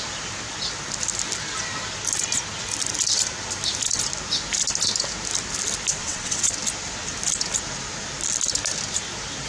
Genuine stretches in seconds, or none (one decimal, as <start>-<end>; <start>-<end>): 0.0-6.0; 6.5-9.5